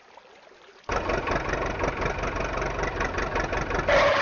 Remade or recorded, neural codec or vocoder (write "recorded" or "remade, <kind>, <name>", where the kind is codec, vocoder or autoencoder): recorded